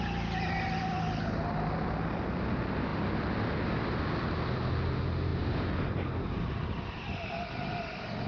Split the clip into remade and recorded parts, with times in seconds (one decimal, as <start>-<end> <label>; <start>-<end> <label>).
0.0-8.3 recorded